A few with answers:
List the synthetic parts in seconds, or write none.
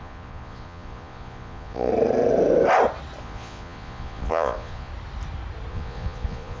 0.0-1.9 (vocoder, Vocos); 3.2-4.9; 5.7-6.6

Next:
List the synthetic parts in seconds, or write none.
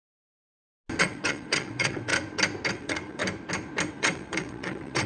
1.0-2.1 (vocoder, WaveNeXt); 2.7-3.2; 3.9-5.1